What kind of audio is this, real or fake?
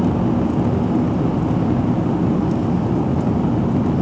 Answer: real